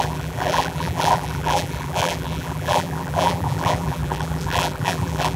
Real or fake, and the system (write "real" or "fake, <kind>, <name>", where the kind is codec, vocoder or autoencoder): fake, vocoder, BigVGAN v2